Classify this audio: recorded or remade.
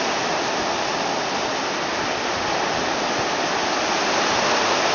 recorded